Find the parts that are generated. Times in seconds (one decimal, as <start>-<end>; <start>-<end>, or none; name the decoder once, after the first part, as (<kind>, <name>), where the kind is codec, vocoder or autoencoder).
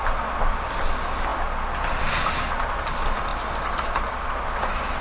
none